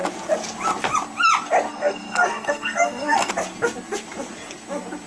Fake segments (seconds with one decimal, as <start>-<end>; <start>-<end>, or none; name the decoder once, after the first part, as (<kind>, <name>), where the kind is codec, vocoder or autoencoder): 1.7-3.3 (codec, SNAC)